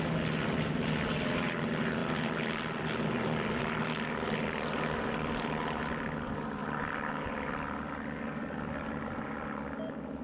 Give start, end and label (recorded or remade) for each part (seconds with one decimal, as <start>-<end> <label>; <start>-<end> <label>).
0.0-6.6 recorded; 6.6-7.6 remade; 7.6-10.2 recorded